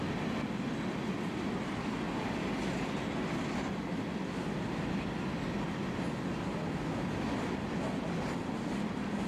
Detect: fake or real real